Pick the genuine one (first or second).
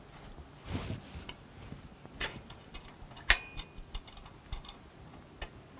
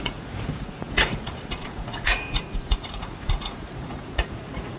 first